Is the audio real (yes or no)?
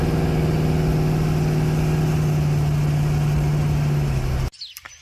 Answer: yes